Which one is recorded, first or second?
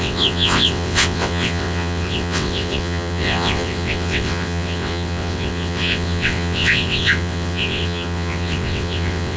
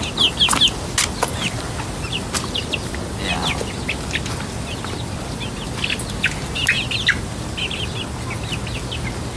second